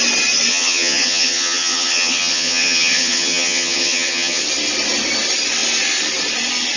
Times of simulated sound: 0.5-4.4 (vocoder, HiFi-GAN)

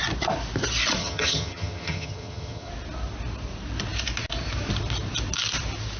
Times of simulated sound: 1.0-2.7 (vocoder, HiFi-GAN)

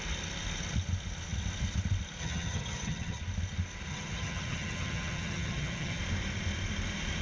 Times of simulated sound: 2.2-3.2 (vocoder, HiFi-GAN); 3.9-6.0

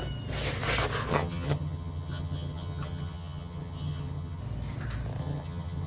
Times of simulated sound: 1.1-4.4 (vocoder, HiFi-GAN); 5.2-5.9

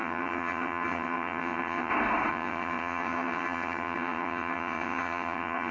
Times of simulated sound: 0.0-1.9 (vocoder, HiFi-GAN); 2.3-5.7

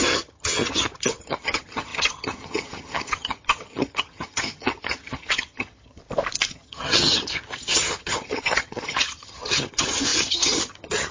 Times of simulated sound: 0.0-6.0 (vocoder, HiFi-GAN); 6.5-11.1